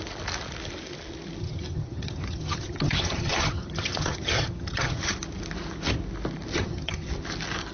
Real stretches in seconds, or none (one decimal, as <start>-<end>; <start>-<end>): 0.0-1.4; 5.0-6.5; 7.1-7.7